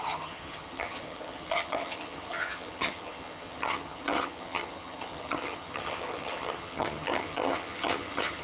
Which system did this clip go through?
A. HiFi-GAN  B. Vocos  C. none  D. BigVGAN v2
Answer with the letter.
A